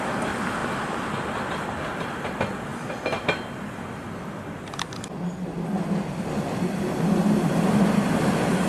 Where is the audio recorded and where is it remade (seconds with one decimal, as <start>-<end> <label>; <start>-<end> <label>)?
0.0-8.7 recorded